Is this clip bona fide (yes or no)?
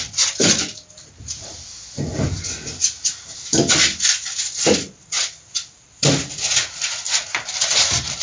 yes